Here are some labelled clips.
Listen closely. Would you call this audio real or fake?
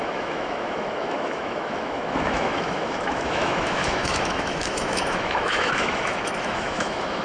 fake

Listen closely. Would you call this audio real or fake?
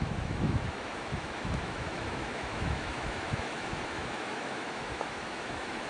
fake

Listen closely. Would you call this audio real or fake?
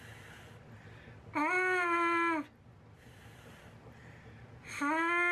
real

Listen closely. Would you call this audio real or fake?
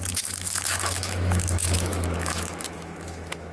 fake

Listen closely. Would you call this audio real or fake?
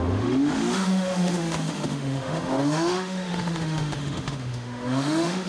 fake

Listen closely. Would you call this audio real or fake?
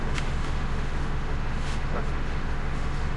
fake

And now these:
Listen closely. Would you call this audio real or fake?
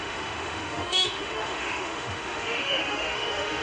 fake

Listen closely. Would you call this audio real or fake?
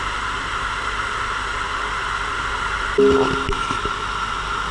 real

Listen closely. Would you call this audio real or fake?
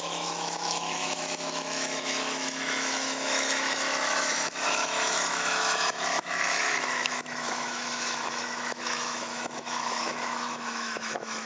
fake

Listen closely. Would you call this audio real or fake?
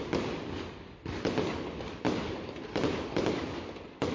real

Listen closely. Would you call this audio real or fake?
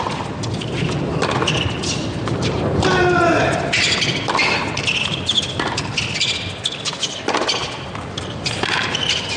real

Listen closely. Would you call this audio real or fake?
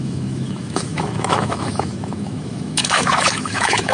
fake